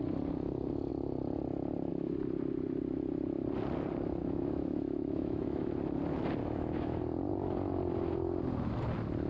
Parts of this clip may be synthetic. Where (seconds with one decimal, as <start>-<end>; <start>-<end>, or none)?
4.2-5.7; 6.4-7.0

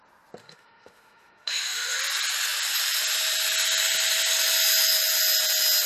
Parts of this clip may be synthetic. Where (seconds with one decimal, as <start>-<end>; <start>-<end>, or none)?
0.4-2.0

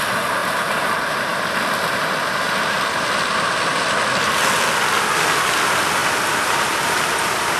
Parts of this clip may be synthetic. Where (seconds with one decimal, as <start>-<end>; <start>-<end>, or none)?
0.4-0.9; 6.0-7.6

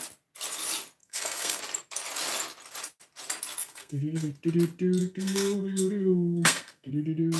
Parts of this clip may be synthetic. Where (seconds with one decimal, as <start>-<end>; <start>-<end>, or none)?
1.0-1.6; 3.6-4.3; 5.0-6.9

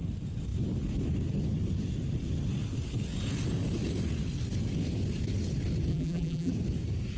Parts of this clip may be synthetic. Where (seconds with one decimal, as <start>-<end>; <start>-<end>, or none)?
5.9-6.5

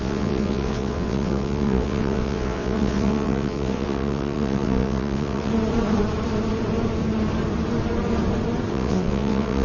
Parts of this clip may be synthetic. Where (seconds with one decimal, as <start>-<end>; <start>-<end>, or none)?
0.0-5.5; 8.7-9.6